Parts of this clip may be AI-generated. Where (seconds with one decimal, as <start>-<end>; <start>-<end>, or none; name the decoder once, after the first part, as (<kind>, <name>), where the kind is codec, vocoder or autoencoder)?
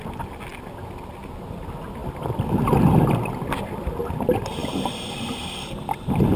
none